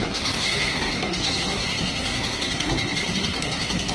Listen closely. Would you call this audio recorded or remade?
remade